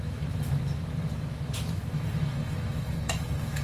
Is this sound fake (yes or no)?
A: yes